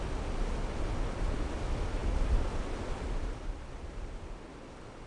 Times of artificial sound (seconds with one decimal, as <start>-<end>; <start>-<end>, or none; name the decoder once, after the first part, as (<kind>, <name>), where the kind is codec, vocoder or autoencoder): none